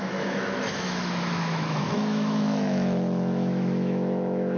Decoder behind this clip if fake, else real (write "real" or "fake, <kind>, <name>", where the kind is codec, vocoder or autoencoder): fake, autoencoder, DAC-VAE